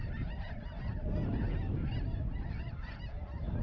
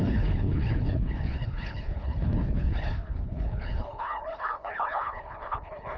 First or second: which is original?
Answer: first